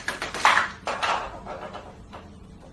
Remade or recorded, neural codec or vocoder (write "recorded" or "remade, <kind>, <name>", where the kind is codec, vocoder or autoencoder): recorded